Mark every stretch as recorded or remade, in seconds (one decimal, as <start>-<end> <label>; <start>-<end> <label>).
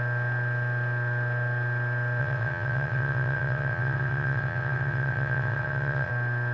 0.0-2.2 recorded; 2.2-6.1 remade; 6.1-6.5 recorded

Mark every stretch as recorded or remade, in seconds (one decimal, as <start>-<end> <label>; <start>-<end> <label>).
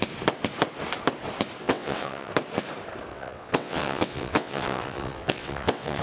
0.0-1.6 recorded; 1.6-2.3 remade; 2.3-3.1 recorded; 3.1-6.0 remade